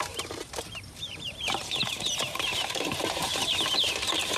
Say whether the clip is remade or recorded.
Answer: remade